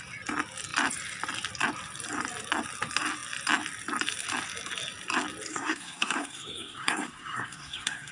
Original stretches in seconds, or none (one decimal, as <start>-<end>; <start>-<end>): 0.0-5.5